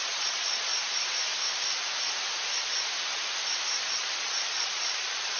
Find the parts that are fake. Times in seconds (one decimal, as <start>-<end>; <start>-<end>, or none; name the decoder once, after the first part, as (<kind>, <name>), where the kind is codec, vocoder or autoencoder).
0.0-0.7 (vocoder, Vocos); 3.9-5.4